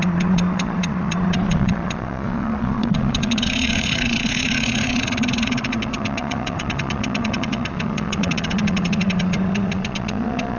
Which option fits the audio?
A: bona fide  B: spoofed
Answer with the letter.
B